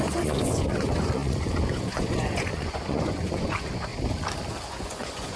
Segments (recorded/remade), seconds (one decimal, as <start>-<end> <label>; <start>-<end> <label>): 0.0-3.9 remade; 3.9-4.7 recorded; 4.7-5.4 remade